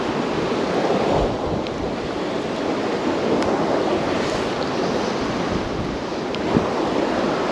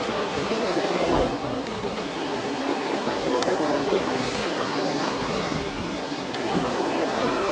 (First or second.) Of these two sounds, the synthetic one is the second